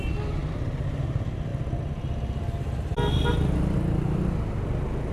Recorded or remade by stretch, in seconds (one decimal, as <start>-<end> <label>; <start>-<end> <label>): 0.0-5.1 recorded